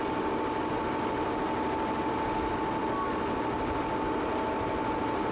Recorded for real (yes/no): yes